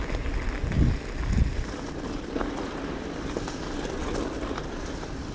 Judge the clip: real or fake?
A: real